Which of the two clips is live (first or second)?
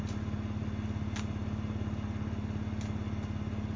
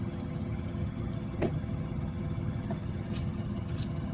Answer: first